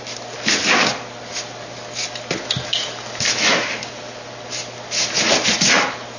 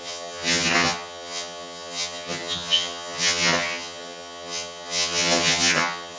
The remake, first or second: second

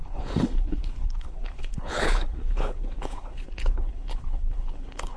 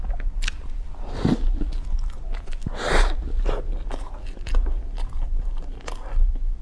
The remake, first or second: first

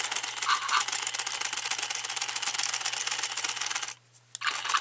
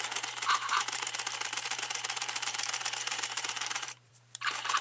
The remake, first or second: second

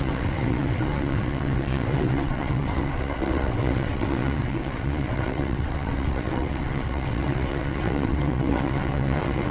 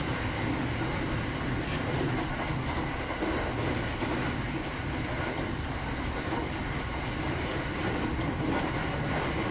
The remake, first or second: first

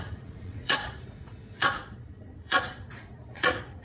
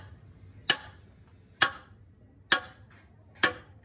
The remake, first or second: first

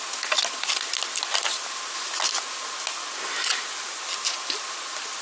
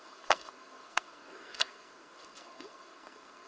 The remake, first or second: second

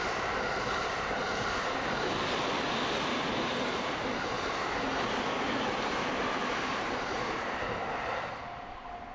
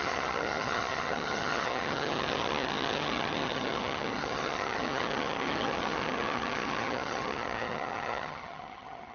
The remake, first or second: second